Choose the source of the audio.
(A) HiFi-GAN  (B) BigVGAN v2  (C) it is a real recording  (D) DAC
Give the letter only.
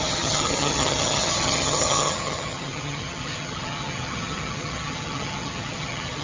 A